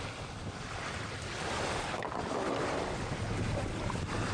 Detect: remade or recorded recorded